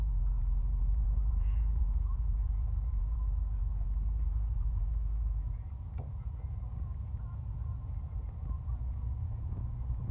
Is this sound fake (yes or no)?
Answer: yes